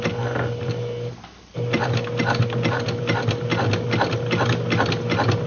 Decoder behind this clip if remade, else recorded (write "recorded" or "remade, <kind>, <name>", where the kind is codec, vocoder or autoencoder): recorded